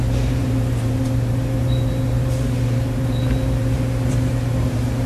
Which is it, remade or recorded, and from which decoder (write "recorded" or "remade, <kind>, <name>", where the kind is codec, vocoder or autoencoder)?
remade, vocoder, BigVGAN v2